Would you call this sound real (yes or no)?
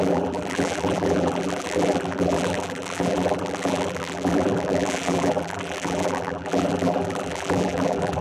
no